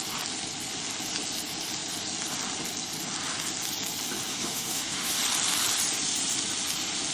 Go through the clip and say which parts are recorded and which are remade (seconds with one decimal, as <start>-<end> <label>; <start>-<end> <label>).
0.0-4.3 recorded; 4.3-5.2 remade; 5.2-7.1 recorded